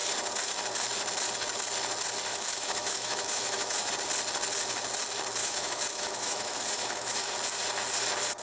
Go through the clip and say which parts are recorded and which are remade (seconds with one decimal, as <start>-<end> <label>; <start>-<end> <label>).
0.0-2.3 recorded; 2.3-3.9 remade; 3.9-5.4 recorded; 5.4-7.3 remade; 7.3-8.4 recorded